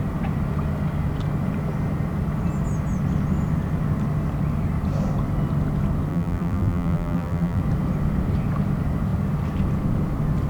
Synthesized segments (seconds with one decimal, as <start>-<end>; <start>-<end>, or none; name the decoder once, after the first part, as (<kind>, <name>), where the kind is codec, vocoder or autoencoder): 6.1-7.6 (vocoder, BigVGAN v2)